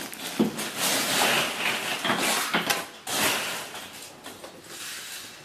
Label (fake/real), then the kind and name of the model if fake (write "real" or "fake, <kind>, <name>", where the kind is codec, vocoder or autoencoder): real